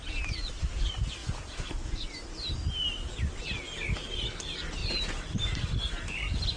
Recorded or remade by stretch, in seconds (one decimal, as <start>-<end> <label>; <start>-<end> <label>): 0.0-1.2 recorded; 1.2-2.1 remade; 2.1-6.6 recorded